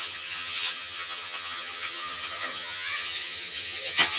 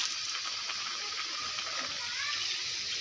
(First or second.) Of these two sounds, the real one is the second